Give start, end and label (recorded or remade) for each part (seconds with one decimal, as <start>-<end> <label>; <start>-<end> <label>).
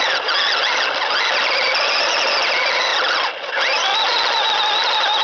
0.0-5.2 recorded